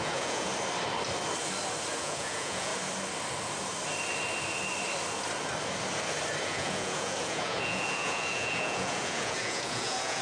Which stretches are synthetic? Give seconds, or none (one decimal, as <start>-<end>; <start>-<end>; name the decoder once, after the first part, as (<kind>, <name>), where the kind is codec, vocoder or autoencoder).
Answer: 0.0-0.5 (vocoder, Vocos); 2.0-2.7; 6.4-10.2